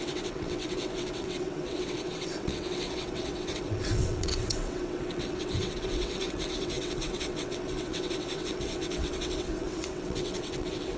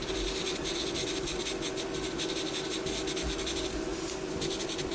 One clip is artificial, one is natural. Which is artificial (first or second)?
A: first